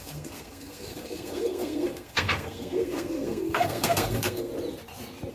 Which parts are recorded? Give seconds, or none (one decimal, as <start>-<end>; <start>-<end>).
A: 4.5-5.3